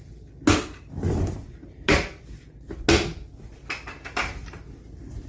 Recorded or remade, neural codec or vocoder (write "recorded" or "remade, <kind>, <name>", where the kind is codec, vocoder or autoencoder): recorded